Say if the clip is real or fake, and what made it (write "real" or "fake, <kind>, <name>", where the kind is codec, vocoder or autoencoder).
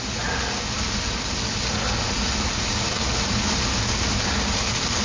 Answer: real